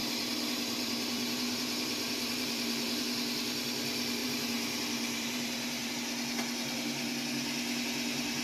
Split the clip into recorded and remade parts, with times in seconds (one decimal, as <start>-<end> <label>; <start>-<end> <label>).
0.0-3.0 remade; 3.0-4.2 recorded; 4.2-5.9 remade; 5.9-8.4 recorded